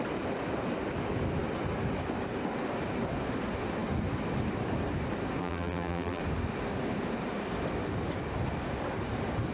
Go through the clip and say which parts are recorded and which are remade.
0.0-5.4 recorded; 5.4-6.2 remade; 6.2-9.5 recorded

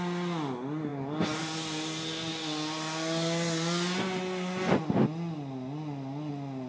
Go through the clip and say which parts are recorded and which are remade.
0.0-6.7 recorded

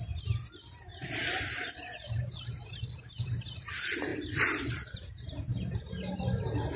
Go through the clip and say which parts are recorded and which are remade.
0.0-0.9 recorded; 0.9-1.8 remade; 1.8-4.1 recorded; 4.1-4.7 remade; 4.7-6.8 recorded